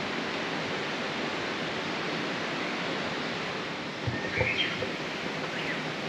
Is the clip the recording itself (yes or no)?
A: yes